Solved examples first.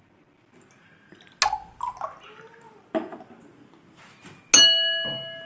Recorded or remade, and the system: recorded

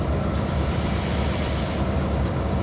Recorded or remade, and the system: remade, vocoder, BigVGAN v2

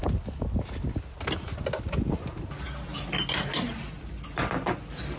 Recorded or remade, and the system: recorded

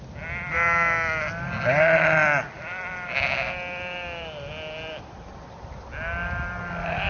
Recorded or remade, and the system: recorded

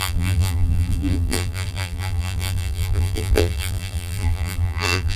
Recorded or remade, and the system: remade, vocoder, BigVGAN v2